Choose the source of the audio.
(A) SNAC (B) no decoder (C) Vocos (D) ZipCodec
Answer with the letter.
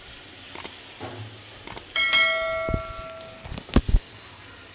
B